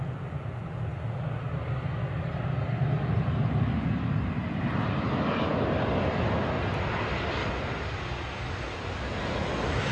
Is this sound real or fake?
real